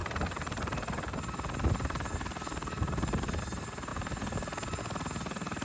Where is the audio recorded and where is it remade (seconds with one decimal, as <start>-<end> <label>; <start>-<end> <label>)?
0.0-5.6 recorded